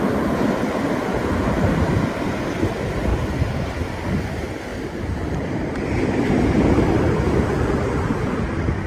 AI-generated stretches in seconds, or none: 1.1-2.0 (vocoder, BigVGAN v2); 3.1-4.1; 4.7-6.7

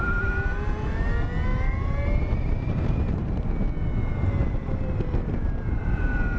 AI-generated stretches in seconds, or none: 1.5-3.3 (vocoder, BigVGAN v2)

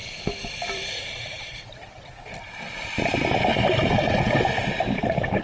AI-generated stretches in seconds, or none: 0.0-3.5 (vocoder, BigVGAN v2); 4.4-5.4

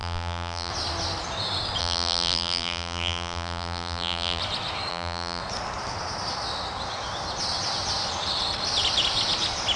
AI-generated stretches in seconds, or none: 0.0-0.7 (vocoder, BigVGAN v2); 1.8-4.4; 4.9-5.4

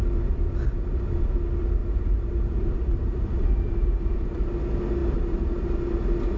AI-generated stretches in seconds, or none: 1.8-4.4 (vocoder, BigVGAN v2); 5.0-5.7

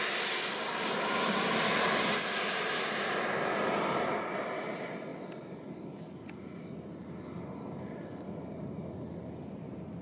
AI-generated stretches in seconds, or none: none